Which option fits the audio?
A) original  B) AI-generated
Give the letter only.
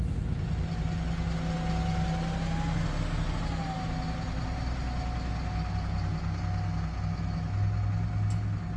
A